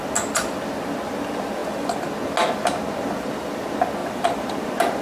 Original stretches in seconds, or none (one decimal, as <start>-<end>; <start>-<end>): 0.0-5.0